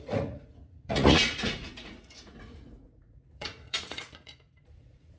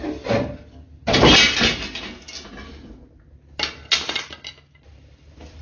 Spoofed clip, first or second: first